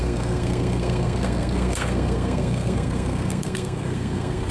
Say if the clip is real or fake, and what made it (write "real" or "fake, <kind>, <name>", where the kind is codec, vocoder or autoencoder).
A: fake, codec, SNAC